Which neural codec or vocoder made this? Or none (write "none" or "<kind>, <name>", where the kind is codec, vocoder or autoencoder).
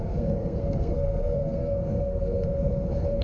codec, SNAC